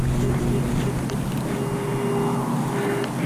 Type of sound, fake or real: real